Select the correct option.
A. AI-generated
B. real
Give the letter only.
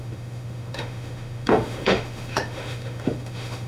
A